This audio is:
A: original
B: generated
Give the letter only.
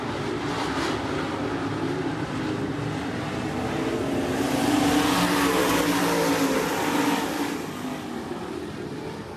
A